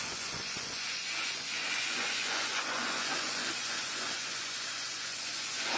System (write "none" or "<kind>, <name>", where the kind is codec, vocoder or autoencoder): vocoder, Vocos